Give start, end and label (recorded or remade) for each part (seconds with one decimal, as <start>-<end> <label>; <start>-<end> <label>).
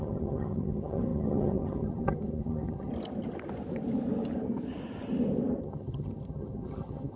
0.0-2.9 remade; 2.9-5.6 recorded; 5.6-7.2 remade